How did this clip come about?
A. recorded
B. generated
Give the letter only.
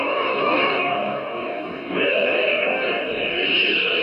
B